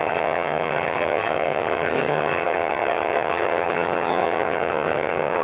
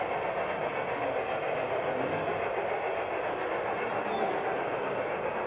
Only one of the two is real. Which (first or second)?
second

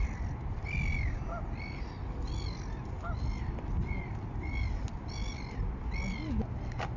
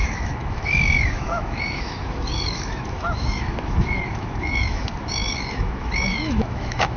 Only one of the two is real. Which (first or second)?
first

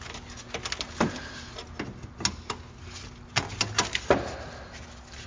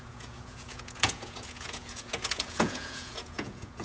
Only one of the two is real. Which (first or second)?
first